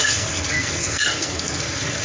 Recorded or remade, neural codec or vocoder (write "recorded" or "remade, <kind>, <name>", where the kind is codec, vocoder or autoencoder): remade, codec, SNAC